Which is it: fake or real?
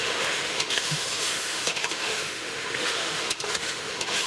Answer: fake